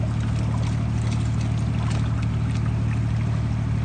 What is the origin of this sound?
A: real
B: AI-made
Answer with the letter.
A